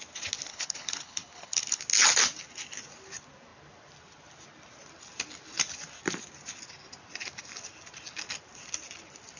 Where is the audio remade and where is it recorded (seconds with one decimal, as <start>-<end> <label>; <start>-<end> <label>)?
0.0-0.5 recorded; 0.5-1.8 remade; 1.8-9.4 recorded